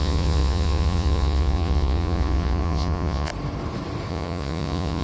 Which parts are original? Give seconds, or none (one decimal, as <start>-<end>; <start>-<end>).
3.3-4.1